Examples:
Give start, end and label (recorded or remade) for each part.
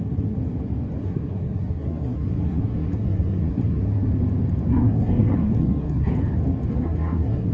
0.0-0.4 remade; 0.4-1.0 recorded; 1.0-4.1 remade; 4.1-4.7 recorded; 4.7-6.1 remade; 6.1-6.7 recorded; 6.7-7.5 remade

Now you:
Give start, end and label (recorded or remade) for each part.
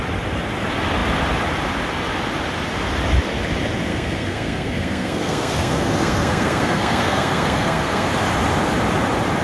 0.0-3.9 recorded; 3.9-8.1 remade; 8.1-9.4 recorded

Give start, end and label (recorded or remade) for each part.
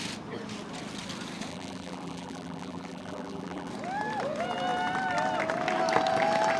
0.0-1.5 recorded; 1.5-3.7 remade; 3.7-6.6 recorded